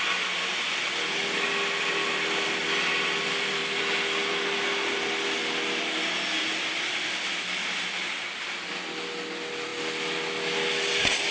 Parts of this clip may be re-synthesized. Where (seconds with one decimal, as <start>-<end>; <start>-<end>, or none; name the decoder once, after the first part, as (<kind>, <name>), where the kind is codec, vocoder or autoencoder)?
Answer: none